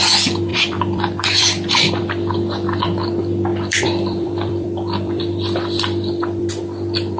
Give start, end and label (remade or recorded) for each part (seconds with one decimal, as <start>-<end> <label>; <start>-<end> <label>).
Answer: 0.0-0.5 recorded; 0.5-2.0 remade; 2.0-3.5 recorded; 3.5-6.5 remade; 6.5-7.2 recorded